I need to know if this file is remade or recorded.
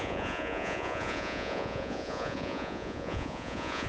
remade